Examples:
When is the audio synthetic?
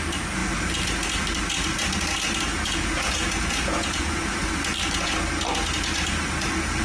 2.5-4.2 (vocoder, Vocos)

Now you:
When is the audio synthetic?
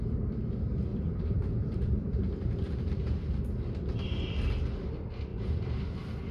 0.9-2.9 (vocoder, BigVGAN v2); 5.3-5.8